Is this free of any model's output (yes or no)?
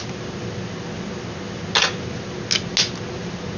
yes